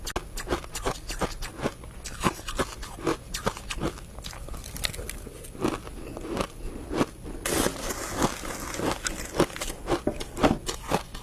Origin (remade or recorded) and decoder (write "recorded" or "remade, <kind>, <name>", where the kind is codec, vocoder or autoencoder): recorded